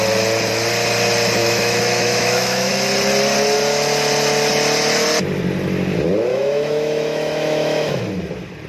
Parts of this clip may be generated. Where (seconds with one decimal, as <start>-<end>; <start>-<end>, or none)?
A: 1.4-2.7; 6.3-8.0